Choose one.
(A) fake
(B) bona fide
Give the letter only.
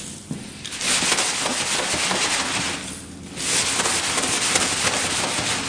B